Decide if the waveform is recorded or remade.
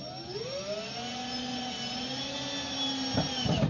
recorded